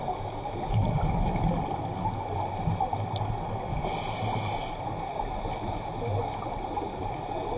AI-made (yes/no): no